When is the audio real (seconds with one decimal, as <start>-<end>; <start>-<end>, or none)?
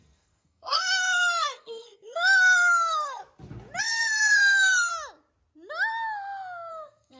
3.2-3.8; 4.9-6.7